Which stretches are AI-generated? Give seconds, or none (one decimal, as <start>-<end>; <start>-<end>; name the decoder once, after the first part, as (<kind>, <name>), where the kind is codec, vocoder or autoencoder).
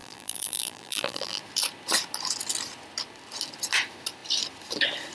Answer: 0.0-1.4 (vocoder, BigVGAN v2)